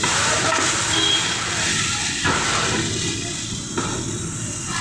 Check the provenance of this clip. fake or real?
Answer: real